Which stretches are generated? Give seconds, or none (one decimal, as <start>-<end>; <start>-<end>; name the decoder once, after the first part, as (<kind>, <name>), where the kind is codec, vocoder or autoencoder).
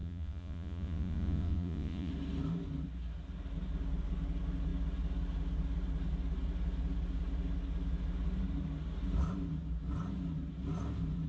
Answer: 0.0-2.1 (vocoder, Vocos)